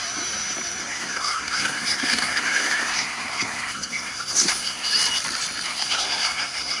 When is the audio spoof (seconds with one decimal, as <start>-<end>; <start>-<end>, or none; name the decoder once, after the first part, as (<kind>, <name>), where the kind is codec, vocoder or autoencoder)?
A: 0.8-4.9 (codec, SNAC); 5.7-6.8